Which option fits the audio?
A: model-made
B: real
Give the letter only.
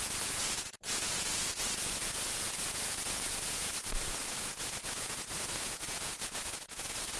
A